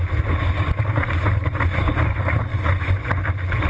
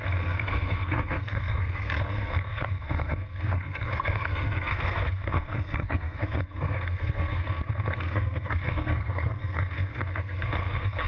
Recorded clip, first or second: first